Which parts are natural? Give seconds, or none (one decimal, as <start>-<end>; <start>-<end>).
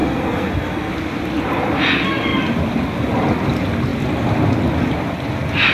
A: 0.9-5.7